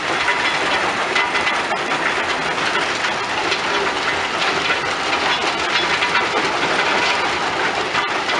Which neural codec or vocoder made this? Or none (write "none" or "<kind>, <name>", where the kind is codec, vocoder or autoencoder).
none